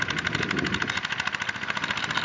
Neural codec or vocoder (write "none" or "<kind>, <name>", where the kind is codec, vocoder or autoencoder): none